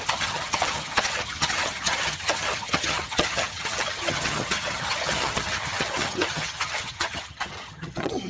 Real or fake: fake